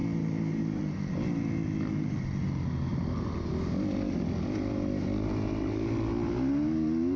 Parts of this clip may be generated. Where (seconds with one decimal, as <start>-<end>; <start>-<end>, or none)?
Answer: 0.0-0.8; 2.9-3.5